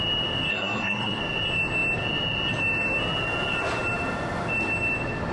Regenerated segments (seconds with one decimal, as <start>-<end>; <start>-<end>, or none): 0.5-1.2